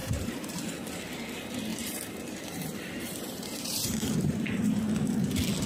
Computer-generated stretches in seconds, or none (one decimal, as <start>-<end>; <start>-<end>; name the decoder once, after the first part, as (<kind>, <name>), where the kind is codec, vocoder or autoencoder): 0.0-0.6 (vocoder, BigVGAN v2); 1.7-5.1